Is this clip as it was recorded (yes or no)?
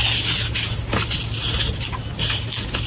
yes